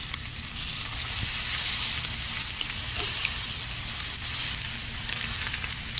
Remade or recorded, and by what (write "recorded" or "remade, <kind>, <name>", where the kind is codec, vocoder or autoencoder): recorded